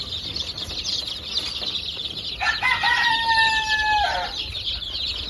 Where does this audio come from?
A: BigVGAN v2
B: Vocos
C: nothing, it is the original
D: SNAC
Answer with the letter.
C